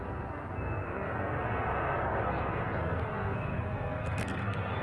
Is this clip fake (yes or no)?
yes